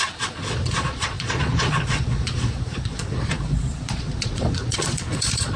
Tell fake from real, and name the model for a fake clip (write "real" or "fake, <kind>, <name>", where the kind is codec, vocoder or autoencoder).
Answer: fake, vocoder, Vocos